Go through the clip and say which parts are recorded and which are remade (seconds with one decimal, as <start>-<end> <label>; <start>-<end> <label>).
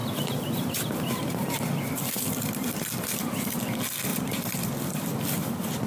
0.0-3.5 remade; 3.5-4.1 recorded; 4.1-5.9 remade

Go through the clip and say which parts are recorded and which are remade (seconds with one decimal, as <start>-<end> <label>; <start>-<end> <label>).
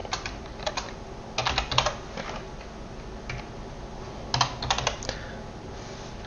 0.0-0.7 remade; 0.7-6.3 recorded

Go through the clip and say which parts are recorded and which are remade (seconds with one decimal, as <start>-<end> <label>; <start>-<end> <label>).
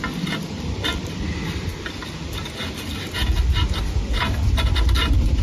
0.0-5.4 recorded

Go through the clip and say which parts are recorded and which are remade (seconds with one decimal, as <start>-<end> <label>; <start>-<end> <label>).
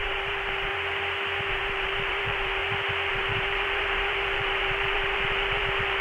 0.0-0.7 remade; 0.7-1.5 recorded; 1.5-2.6 remade; 2.6-3.1 recorded; 3.1-6.0 remade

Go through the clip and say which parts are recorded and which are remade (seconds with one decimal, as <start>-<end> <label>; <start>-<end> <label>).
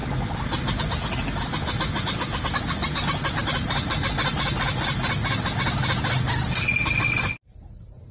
0.0-8.1 recorded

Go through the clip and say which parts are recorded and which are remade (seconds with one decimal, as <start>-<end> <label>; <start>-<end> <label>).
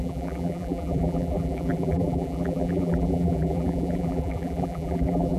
0.0-5.4 remade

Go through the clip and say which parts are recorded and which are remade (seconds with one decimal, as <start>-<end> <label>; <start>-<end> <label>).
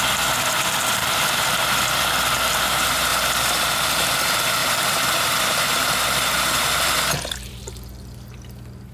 0.0-1.0 recorded; 1.0-1.9 remade; 1.9-3.1 recorded; 3.1-3.9 remade; 3.9-4.6 recorded; 4.6-7.7 remade; 7.7-8.9 recorded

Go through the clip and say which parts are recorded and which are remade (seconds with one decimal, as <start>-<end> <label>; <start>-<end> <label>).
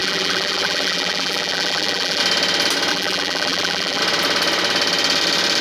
0.0-2.2 remade; 2.2-2.9 recorded; 2.9-4.0 remade; 4.0-5.6 recorded